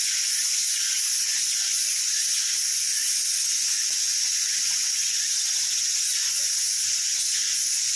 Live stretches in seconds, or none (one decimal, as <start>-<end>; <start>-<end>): 5.3-6.1